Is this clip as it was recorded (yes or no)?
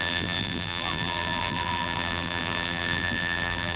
no